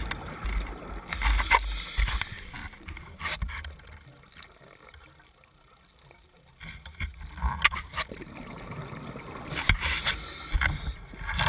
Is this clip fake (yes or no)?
no